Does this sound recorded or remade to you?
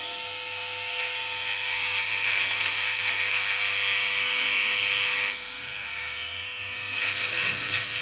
remade